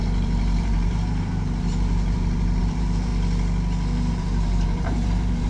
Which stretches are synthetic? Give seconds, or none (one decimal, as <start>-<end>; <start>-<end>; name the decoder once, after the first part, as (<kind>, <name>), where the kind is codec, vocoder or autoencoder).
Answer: 0.0-3.1 (vocoder, BigVGAN v2); 4.1-5.5